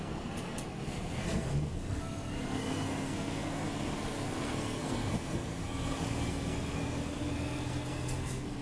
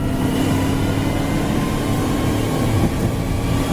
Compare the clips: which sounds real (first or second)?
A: second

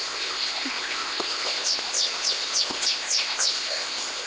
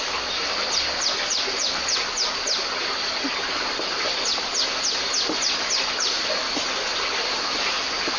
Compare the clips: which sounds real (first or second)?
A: second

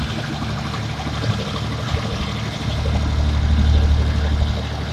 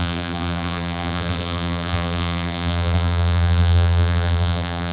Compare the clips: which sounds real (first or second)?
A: first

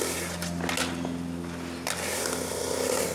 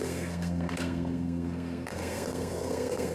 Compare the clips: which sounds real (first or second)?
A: first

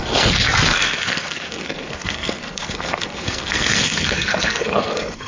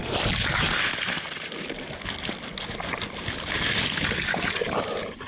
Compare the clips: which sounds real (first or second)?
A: second